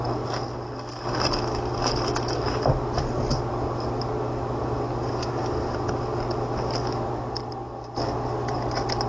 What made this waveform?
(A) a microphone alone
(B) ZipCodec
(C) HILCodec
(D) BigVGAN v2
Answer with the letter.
A